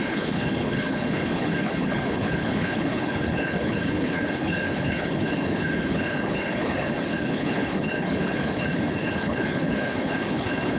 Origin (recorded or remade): remade